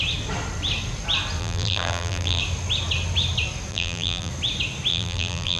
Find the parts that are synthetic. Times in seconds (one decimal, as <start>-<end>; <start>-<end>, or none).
1.4-2.4; 3.7-4.3; 4.9-5.6

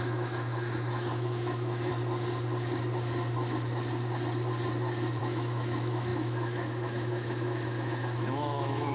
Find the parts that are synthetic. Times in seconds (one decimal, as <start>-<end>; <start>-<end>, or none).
0.0-1.9; 5.2-8.9